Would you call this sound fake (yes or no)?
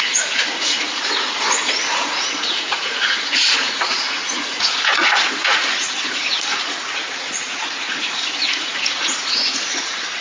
yes